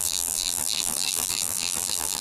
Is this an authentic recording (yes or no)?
no